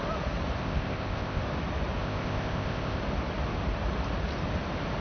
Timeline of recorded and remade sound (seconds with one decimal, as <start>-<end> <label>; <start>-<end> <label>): 0.0-0.6 recorded; 0.6-1.4 remade; 1.4-2.0 recorded; 2.0-3.0 remade; 3.0-5.0 recorded